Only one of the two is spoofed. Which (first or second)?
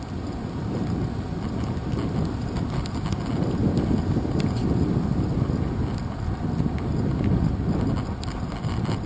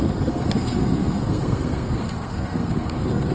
second